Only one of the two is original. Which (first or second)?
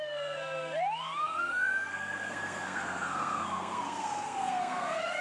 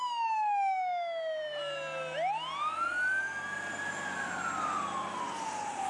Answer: second